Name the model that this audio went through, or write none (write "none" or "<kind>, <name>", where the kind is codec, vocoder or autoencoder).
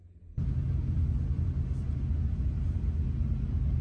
none